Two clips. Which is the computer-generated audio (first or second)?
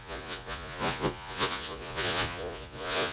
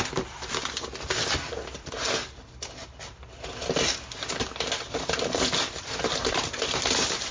first